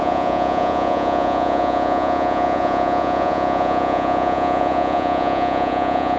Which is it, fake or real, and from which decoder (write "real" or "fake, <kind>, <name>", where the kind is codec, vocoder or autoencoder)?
fake, vocoder, Vocos